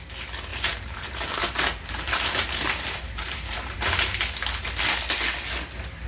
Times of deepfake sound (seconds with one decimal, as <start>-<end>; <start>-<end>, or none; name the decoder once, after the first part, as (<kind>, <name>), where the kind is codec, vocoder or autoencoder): 0.5-4.2 (vocoder, BigVGAN v2)